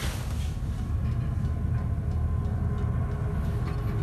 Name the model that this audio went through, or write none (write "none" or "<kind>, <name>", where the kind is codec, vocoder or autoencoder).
none